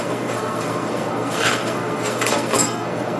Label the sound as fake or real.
fake